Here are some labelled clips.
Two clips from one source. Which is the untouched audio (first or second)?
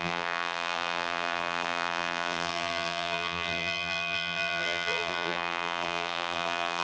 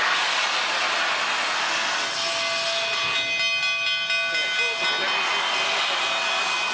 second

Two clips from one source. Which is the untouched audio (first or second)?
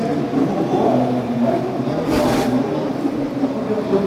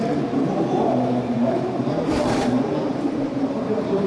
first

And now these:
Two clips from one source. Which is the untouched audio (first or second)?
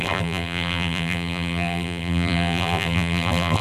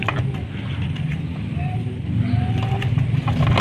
second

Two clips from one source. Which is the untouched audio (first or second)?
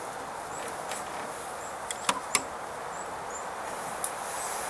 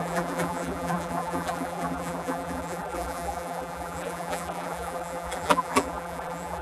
first